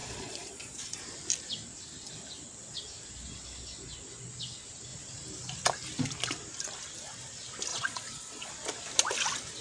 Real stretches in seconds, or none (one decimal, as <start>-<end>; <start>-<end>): 1.0-7.7; 8.5-9.6